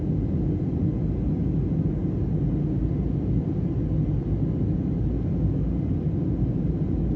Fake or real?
real